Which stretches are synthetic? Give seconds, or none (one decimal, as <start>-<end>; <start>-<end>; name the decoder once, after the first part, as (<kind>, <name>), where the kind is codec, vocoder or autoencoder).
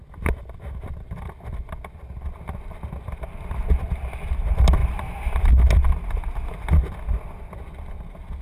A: 4.8-5.6 (vocoder, BigVGAN v2)